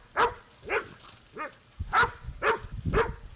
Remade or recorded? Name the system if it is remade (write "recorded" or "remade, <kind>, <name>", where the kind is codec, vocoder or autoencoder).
recorded